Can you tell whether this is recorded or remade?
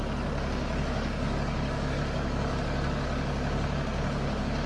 remade